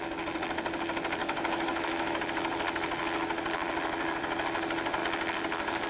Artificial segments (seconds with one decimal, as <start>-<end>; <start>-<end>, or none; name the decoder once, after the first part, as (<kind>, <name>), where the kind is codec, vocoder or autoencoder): 1.2-2.2 (autoencoder, DAC-VAE)